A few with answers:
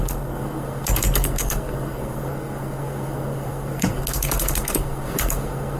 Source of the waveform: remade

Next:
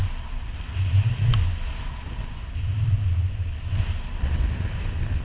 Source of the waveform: recorded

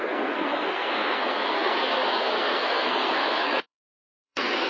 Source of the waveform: remade